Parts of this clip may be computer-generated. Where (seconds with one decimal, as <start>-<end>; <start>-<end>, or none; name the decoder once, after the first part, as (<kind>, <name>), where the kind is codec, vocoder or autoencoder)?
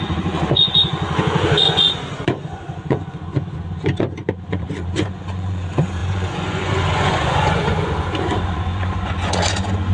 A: 0.0-9.9 (vocoder, Vocos)